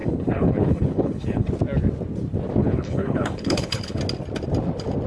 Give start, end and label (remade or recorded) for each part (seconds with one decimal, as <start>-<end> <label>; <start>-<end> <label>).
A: 0.0-1.5 remade; 1.5-2.6 recorded; 2.6-4.0 remade; 4.0-5.1 recorded